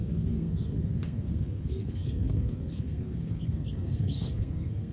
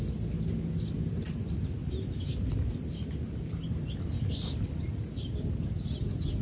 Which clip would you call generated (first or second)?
first